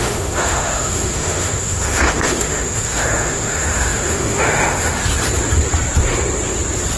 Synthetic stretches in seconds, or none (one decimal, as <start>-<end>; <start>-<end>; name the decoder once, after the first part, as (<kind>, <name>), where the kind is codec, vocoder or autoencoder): 0.0-5.0 (autoencoder, DAC-VAE)